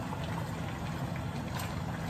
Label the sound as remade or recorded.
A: recorded